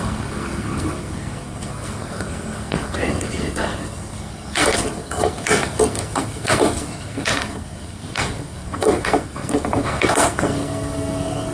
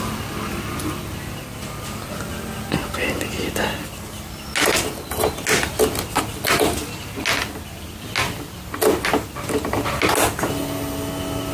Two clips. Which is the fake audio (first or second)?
first